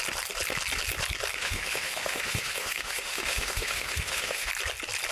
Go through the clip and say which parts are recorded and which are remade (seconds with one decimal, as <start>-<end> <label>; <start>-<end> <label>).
0.0-1.4 recorded; 1.4-4.5 remade; 4.5-5.1 recorded